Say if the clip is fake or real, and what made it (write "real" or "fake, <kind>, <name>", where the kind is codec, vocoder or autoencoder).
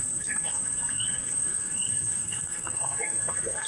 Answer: fake, codec, SNAC